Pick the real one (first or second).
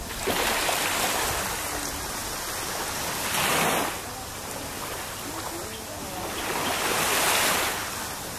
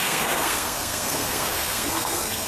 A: first